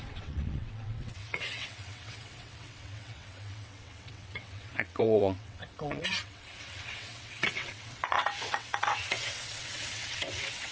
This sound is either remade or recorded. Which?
remade